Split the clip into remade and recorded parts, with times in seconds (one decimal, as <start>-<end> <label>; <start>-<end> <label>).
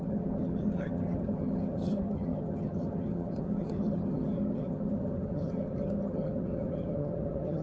0.0-7.6 remade